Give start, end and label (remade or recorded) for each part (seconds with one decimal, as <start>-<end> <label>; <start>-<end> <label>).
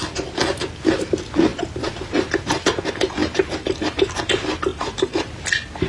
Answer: 0.0-1.5 recorded; 1.5-2.8 remade; 2.8-3.2 recorded; 3.2-4.2 remade; 4.2-4.7 recorded; 4.7-5.3 remade; 5.3-5.9 recorded